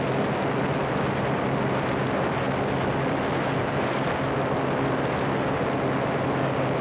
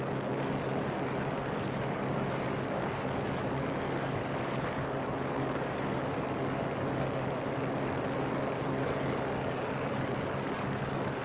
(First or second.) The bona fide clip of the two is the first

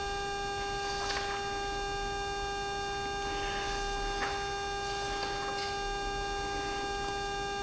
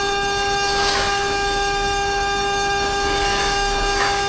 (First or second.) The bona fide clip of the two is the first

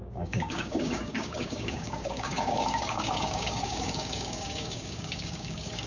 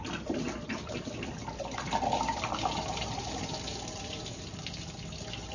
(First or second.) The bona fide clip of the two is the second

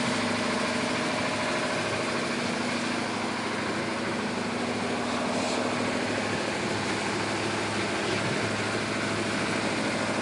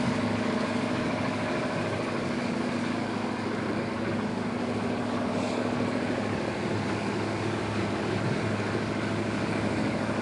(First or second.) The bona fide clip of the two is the first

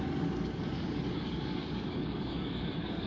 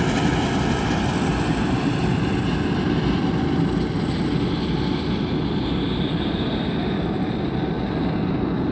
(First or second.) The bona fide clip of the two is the second